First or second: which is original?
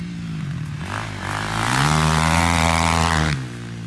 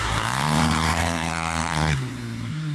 first